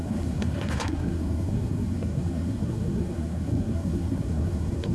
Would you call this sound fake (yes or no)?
yes